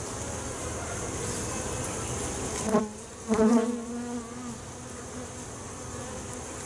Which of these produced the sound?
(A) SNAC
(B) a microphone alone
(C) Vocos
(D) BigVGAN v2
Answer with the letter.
B